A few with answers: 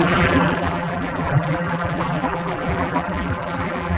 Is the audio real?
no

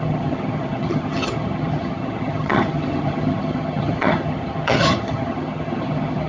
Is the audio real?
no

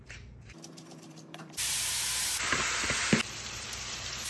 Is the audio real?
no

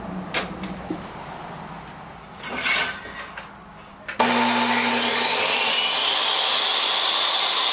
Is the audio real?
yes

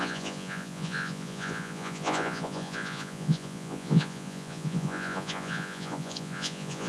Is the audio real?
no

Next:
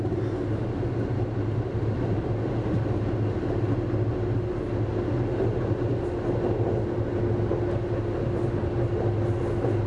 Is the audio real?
yes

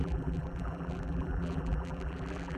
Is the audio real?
no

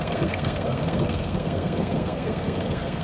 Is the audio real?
no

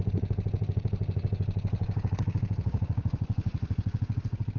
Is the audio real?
no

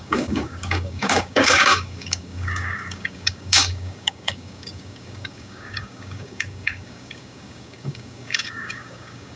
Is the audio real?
no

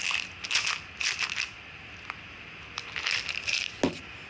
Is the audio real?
yes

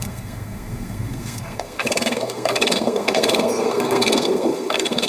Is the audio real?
no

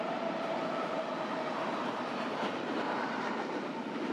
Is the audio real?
no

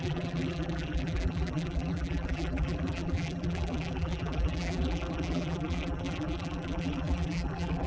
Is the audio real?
no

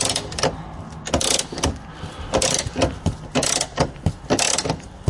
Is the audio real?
yes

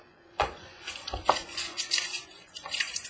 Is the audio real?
no